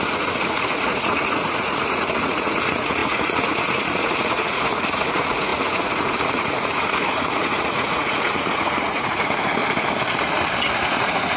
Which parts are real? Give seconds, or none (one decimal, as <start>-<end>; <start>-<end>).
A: 9.6-11.0